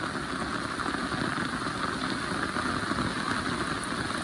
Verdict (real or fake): real